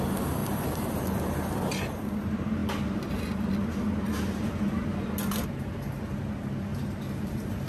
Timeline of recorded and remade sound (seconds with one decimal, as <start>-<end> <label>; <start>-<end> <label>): 0.0-0.4 recorded; 0.4-1.2 remade; 1.2-6.7 recorded; 6.7-7.7 remade